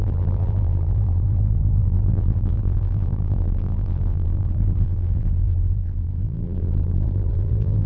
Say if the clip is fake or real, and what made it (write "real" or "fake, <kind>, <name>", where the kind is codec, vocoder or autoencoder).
fake, vocoder, BigVGAN v2